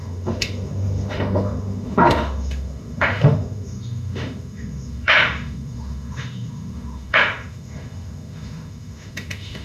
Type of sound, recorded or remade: remade